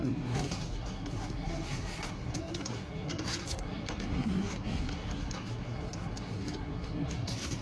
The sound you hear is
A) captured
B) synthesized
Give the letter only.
B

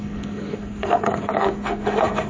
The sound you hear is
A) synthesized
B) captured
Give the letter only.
A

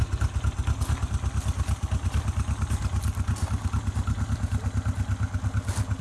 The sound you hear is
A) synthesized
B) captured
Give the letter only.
B